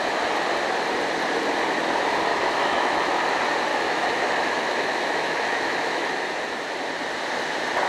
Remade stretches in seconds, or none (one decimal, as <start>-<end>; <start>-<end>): 2.3-3.0; 3.7-6.1